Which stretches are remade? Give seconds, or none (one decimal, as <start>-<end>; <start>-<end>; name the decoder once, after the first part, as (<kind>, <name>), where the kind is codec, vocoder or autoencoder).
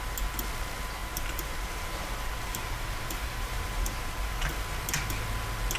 1.0-4.5 (vocoder, BigVGAN v2)